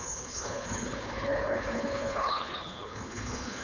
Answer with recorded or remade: remade